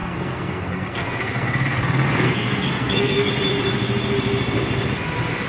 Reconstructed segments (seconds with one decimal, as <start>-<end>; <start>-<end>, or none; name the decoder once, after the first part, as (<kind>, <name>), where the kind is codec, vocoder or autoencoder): 0.0-3.3 (codec, SNAC)